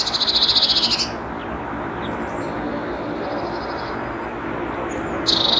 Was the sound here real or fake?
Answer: real